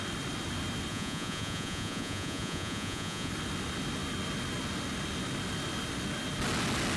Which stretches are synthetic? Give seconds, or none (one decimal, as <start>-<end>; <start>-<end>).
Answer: 0.9-3.3